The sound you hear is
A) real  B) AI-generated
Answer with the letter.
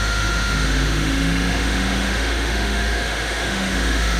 B